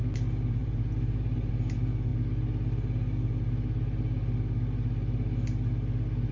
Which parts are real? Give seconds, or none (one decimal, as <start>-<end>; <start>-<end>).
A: 0.0-0.6; 1.5-6.3